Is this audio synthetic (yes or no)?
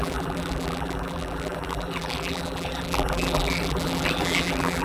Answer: yes